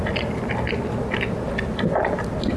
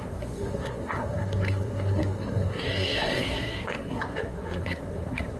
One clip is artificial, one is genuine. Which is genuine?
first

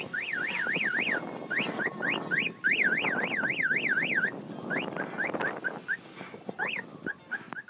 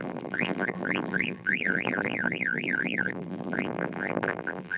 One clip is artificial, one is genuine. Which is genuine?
first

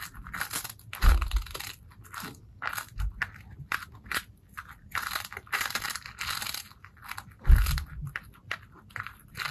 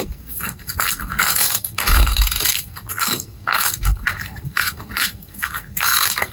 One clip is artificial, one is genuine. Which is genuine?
first